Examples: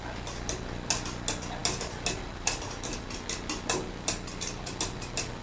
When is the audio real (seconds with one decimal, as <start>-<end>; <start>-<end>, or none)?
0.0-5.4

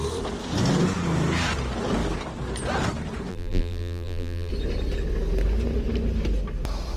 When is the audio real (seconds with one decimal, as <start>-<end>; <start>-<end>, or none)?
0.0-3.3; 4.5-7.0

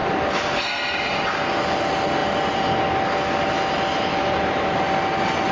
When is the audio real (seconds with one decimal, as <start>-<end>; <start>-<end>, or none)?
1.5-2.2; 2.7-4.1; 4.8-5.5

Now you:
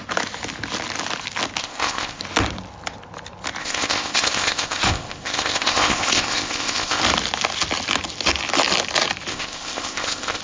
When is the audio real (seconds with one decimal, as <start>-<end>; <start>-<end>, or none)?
0.0-1.6; 2.2-3.6; 7.0-9.3